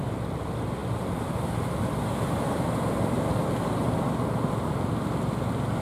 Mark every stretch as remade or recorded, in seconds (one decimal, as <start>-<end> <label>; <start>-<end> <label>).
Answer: 0.0-5.8 recorded